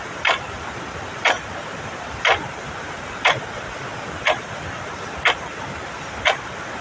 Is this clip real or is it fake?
real